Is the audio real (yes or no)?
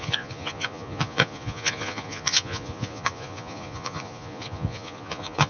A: no